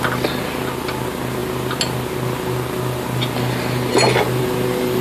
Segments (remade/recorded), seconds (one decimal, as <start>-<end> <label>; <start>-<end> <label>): 0.0-5.0 recorded